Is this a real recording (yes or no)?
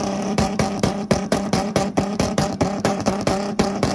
no